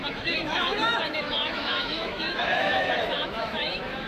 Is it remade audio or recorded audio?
remade